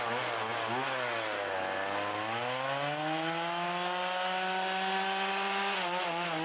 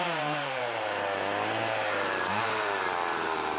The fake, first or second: second